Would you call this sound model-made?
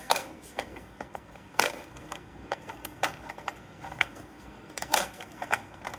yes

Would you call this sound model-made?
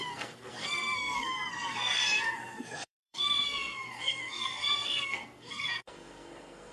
yes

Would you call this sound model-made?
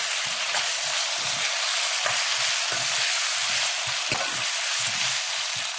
no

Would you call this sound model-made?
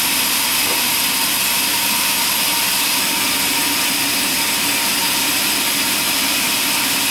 yes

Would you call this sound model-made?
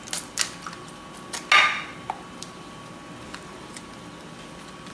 no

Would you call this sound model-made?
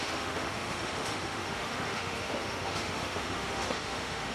yes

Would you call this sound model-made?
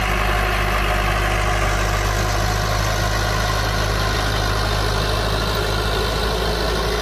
no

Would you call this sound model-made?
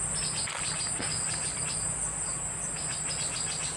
no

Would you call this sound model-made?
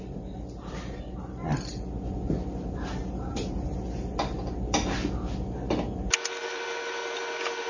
no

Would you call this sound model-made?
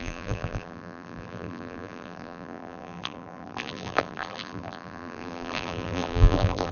yes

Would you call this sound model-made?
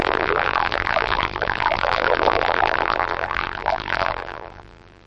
yes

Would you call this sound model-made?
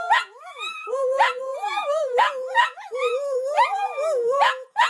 yes